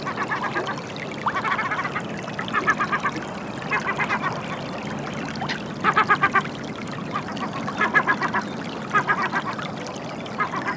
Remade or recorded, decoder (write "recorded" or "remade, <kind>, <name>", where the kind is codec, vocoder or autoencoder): recorded